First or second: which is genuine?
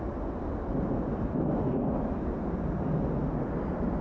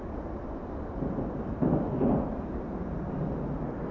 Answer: first